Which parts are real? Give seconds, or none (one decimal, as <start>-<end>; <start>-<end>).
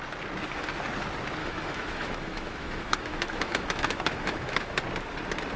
0.0-1.4; 4.8-5.6